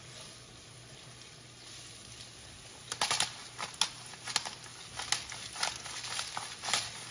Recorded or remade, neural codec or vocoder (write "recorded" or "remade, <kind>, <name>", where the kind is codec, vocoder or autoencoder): recorded